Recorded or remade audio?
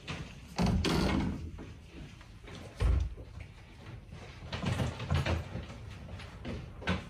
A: recorded